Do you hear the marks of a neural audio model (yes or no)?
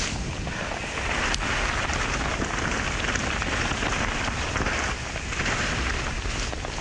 no